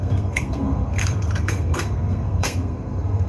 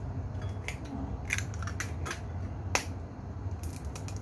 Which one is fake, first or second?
first